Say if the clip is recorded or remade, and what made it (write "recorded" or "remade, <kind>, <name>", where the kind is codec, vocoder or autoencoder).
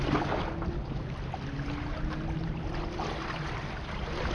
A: recorded